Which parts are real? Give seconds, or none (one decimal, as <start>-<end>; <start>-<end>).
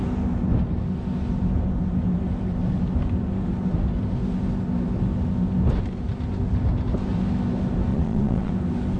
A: 0.0-7.9; 8.5-9.0